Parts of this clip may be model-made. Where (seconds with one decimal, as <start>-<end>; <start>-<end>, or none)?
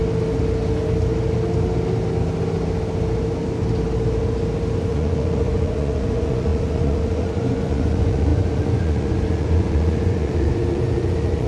4.9-11.5